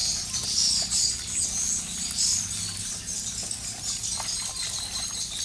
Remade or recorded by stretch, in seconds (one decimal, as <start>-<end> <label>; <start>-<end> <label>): 0.0-5.4 recorded